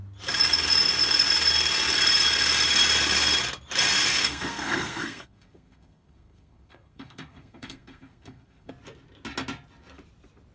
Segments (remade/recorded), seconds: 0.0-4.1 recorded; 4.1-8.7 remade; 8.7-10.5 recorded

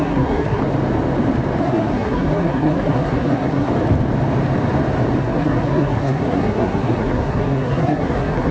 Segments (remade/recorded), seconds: 0.0-0.6 remade; 0.6-1.6 recorded; 1.6-3.7 remade; 3.7-5.2 recorded; 5.2-8.5 remade

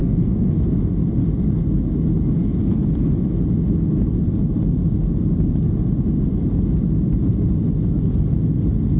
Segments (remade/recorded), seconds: 0.0-0.7 remade; 0.7-9.0 recorded

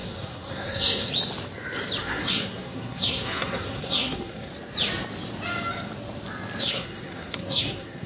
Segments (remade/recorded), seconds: 0.0-1.1 remade; 1.1-2.0 recorded; 2.0-4.5 remade; 4.5-6.6 recorded; 6.6-8.1 remade

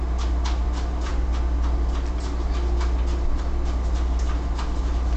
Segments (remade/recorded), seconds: 0.0-5.2 recorded

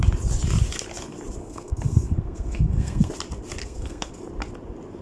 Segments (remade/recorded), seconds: 0.0-1.4 recorded; 1.4-3.1 remade; 3.1-3.6 recorded; 3.6-4.1 remade; 4.1-5.0 recorded